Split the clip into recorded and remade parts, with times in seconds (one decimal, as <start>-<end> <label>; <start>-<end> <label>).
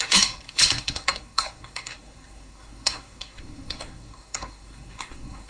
0.0-5.5 remade